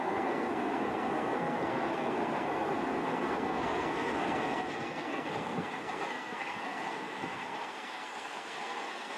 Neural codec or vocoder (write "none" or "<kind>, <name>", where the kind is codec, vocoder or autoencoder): codec, SNAC